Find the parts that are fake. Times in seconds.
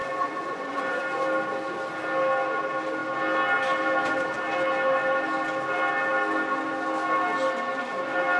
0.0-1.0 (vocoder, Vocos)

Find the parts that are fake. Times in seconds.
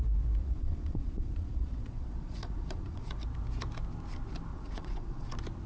0.4-3.1 (vocoder, Vocos); 4.5-5.3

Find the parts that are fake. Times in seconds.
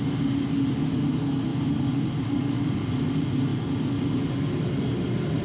none